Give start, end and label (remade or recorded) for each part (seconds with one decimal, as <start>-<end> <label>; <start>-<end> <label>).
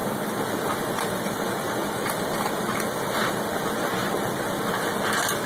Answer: 0.0-3.3 remade; 3.3-5.5 recorded